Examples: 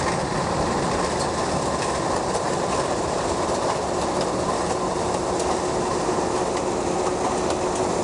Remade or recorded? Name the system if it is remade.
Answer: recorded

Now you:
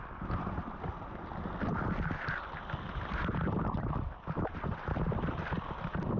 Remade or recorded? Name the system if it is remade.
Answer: recorded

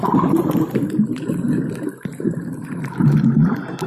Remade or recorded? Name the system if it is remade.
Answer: recorded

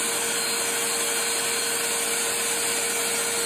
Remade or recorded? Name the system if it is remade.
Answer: recorded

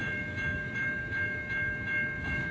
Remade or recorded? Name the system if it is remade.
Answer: remade, autoencoder, DAC-VAE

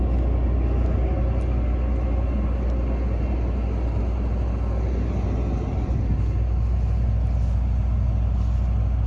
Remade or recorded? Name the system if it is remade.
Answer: recorded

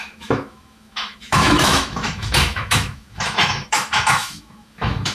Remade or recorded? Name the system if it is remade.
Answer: remade, autoencoder, DAC-VAE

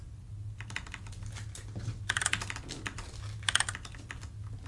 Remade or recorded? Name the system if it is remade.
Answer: recorded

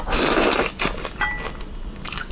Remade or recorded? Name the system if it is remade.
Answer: recorded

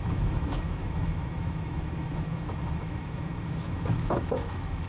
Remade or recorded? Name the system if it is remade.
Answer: remade, autoencoder, DAC-VAE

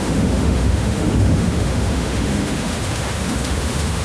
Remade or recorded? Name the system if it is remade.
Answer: remade, autoencoder, DAC-VAE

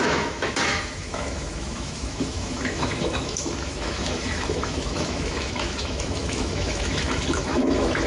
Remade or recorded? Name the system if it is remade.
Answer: remade, autoencoder, DAC-VAE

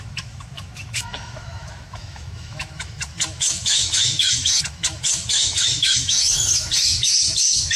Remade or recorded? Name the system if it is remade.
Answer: remade, autoencoder, DAC-VAE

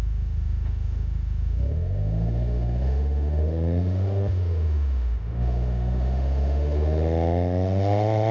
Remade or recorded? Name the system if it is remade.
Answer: remade, autoencoder, DAC-VAE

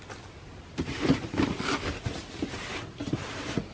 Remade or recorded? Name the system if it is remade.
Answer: recorded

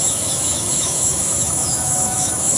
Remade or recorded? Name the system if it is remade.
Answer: remade, autoencoder, DAC-VAE